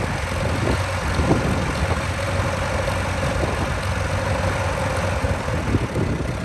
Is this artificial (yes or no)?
no